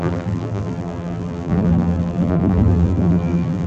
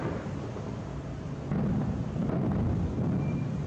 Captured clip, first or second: second